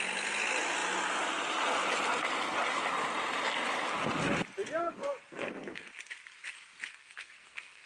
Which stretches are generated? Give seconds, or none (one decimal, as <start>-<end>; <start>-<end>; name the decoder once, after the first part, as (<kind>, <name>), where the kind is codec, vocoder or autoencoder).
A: 4.8-5.9 (codec, SNAC); 6.9-7.9

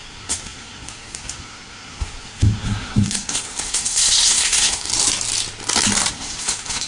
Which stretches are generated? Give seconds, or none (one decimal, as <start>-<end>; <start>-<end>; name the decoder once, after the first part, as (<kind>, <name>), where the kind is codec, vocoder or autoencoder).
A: 0.0-4.9 (codec, SNAC); 6.1-6.9